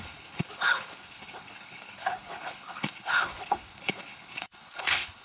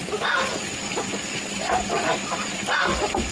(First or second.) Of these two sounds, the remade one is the first